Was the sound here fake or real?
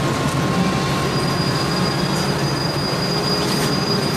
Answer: real